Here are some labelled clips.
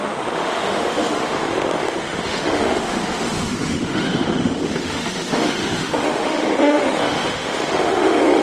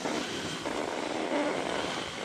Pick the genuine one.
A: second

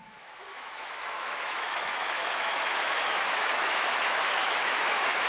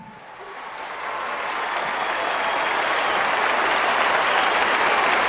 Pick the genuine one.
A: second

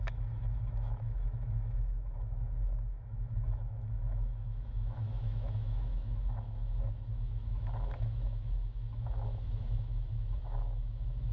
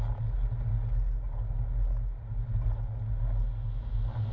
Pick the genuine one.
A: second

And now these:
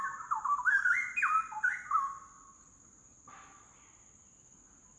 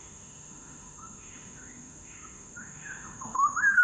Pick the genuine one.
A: first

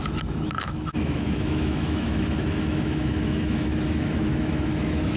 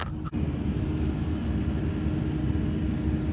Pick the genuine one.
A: second